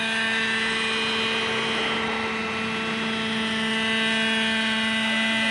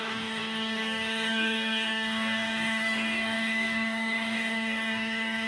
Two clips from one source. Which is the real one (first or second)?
first